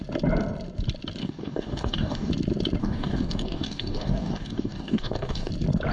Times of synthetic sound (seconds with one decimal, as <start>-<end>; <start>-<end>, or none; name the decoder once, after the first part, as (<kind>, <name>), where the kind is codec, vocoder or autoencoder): 1.2-2.3 (codec, DAC); 2.8-5.5

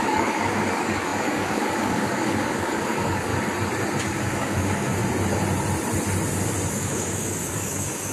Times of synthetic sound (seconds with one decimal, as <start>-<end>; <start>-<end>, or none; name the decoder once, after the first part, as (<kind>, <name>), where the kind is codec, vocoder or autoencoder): 0.0-3.3 (codec, DAC); 4.0-5.0; 6.7-8.1